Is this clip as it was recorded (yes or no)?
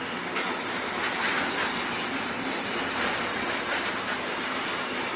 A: yes